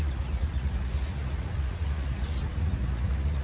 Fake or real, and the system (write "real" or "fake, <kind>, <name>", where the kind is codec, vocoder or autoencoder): fake, vocoder, Vocos